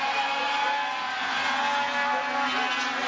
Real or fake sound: real